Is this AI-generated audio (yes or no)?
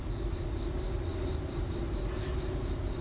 no